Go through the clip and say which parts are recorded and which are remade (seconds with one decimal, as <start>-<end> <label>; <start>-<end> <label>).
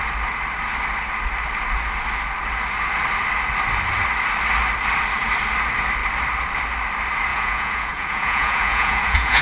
0.0-7.3 recorded; 7.3-9.4 remade